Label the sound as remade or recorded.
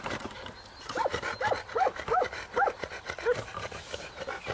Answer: recorded